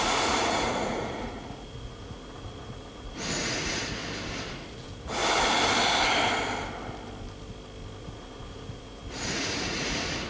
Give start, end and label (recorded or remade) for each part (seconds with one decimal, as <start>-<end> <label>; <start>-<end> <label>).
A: 0.0-4.0 remade; 4.0-4.5 recorded; 4.5-5.2 remade; 5.2-8.0 recorded; 8.0-10.3 remade